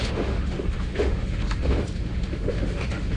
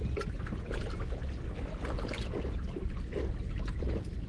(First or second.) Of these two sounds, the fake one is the first